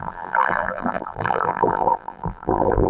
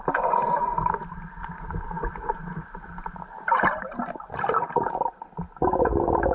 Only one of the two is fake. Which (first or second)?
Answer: first